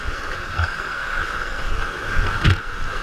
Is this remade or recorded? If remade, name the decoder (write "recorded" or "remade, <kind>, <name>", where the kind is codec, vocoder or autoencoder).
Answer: remade, codec, SNAC